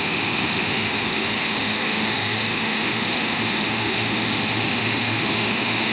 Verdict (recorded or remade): remade